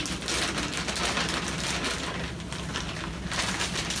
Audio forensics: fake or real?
real